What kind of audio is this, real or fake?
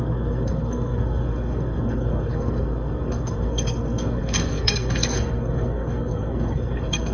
fake